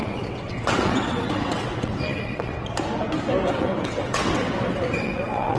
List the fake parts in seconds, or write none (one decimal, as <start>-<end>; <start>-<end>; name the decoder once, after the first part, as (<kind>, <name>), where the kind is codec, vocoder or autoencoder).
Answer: 0.0-2.5 (vocoder, WaveNeXt); 3.5-5.6